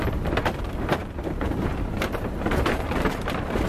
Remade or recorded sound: remade